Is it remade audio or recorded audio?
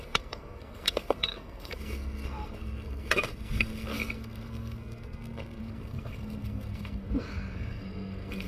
remade